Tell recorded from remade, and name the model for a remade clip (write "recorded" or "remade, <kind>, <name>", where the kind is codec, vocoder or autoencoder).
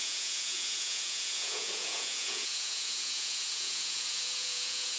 remade, vocoder, Vocos